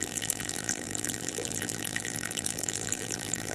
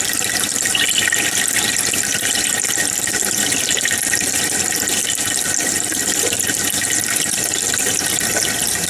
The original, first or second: second